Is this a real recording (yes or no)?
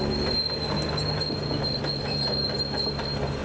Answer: yes